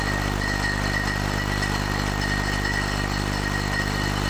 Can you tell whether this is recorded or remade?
recorded